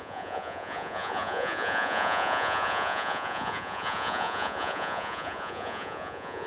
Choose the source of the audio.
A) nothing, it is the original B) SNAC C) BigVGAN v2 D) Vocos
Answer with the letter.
D